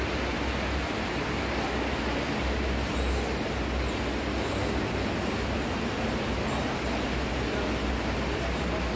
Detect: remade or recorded recorded